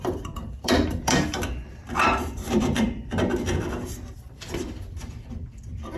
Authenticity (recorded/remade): remade